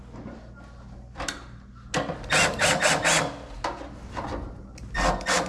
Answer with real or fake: real